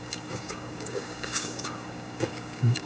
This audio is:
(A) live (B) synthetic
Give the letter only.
B